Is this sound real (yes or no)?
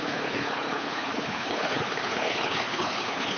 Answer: no